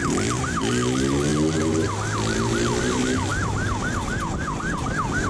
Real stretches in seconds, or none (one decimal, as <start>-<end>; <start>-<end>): 0.0-5.3